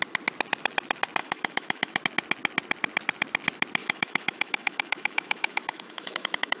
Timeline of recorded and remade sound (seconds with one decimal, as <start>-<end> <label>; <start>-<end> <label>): 0.0-1.2 recorded; 1.2-2.0 remade; 2.0-3.8 recorded; 3.8-6.6 remade